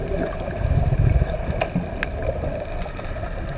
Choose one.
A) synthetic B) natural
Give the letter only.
B